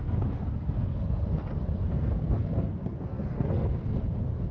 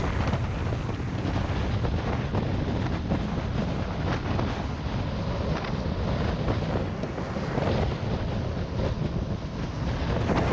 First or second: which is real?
second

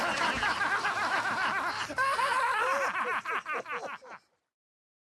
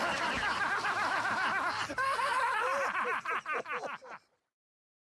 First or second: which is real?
first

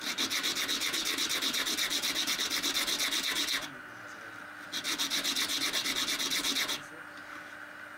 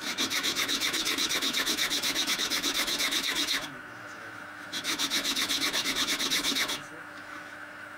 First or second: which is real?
first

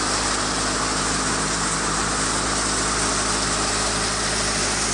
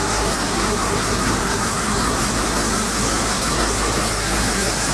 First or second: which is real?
first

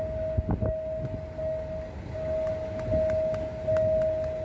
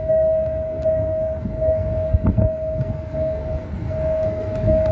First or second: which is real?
first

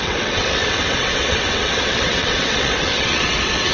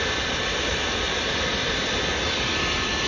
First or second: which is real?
second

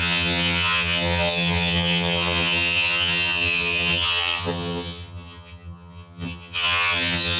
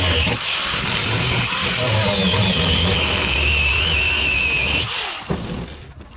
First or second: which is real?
second